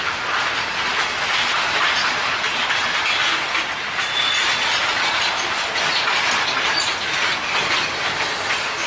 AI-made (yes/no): no